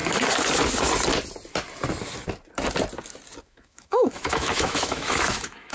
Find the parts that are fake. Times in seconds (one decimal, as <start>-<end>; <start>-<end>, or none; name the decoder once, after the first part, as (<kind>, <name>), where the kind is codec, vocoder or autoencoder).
3.4-5.7 (autoencoder, DAC-VAE)